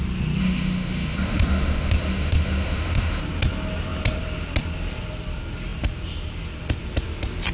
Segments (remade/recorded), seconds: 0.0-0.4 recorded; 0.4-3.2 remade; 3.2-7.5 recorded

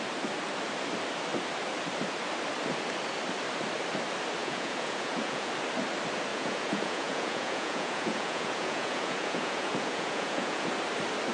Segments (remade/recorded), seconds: 0.0-4.4 recorded; 4.4-5.5 remade; 5.5-6.3 recorded; 6.3-10.7 remade; 10.7-11.3 recorded

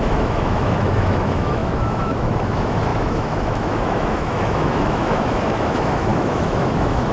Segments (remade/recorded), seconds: 0.0-7.1 remade

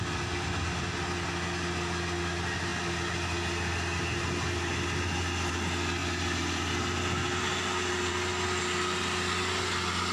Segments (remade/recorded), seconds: 0.0-10.1 recorded

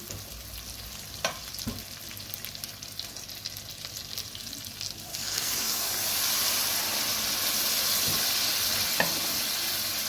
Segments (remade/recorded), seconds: 0.0-5.1 recorded; 5.1-5.9 remade; 5.9-10.1 recorded